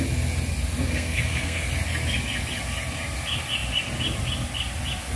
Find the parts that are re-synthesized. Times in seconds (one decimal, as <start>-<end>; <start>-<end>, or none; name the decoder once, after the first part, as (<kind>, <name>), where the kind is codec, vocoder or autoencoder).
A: 0.8-1.7 (codec, SNAC)